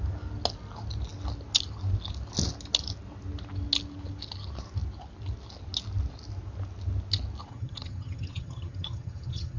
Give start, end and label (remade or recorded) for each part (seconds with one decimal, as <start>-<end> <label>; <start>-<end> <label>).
0.0-7.5 recorded; 7.5-9.6 remade